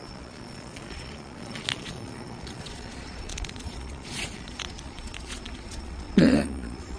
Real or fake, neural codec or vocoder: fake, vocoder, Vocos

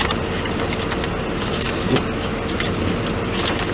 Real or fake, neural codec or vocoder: fake, vocoder, BigVGAN v2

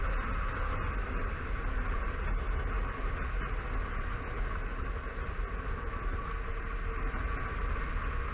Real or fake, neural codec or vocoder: real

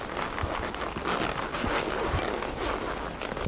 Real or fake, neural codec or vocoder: real